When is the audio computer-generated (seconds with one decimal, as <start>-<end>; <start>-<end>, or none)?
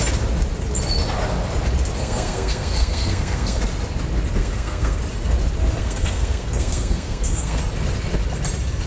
2.0-3.6; 4.4-5.0; 5.8-7.6